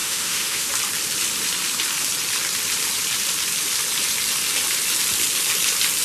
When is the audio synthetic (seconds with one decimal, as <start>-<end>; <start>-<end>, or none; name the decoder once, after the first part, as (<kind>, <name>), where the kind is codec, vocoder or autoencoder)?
0.0-0.7 (autoencoder, DAC-VAE)